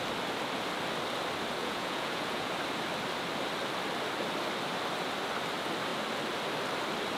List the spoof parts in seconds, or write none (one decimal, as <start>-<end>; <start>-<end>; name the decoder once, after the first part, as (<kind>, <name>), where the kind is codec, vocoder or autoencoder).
1.6-2.5 (vocoder, Vocos)